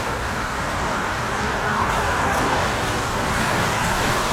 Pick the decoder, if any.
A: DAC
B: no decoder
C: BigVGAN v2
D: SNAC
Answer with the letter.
A